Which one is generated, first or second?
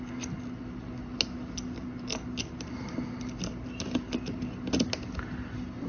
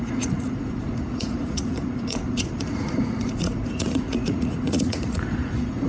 second